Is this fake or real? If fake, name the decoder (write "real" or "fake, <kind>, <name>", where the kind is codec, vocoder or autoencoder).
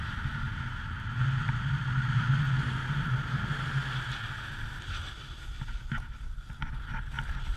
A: real